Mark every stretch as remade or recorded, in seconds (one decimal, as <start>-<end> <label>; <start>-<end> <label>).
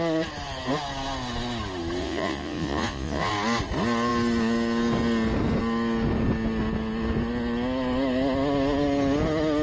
0.0-2.0 recorded; 2.0-3.3 remade; 3.3-9.6 recorded